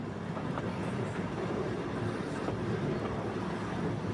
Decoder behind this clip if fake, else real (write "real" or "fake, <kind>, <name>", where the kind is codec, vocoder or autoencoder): real